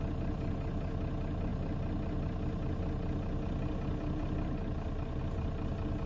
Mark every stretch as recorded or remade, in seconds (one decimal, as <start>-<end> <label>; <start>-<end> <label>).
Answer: 0.0-6.1 recorded